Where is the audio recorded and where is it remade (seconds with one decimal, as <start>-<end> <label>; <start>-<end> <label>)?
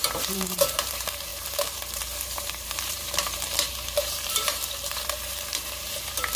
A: 0.0-6.4 remade